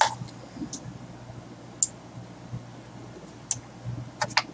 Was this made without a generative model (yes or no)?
yes